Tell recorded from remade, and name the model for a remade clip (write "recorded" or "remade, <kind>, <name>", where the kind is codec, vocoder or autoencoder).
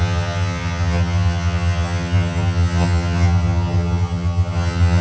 remade, vocoder, HiFi-GAN